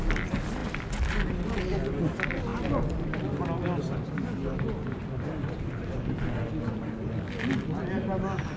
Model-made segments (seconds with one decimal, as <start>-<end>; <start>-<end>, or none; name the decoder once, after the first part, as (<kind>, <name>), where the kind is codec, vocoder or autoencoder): none